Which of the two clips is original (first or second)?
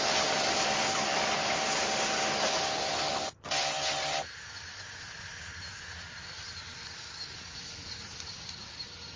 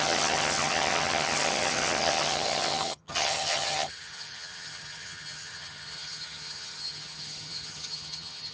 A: first